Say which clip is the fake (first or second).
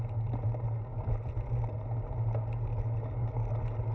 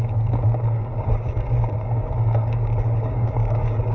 second